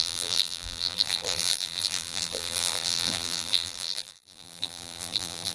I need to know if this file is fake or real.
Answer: fake